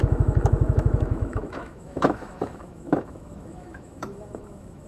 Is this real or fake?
fake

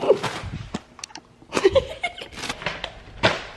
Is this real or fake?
real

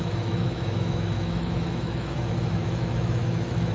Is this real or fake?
fake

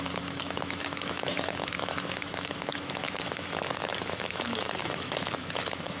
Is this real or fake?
fake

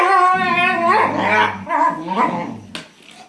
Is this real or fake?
real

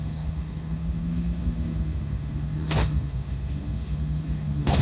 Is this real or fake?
fake